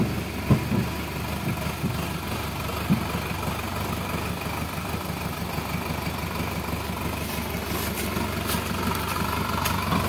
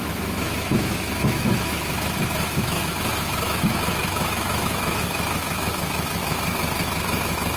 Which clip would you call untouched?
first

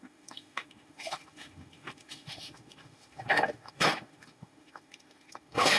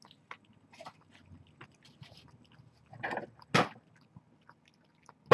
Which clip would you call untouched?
second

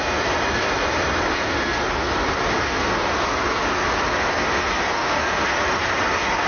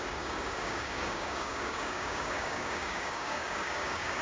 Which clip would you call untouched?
first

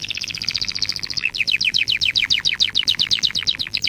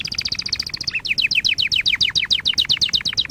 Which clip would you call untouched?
second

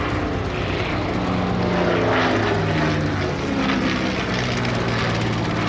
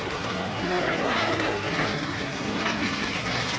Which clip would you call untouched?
first